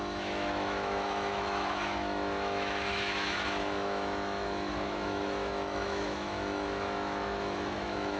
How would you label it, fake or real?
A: fake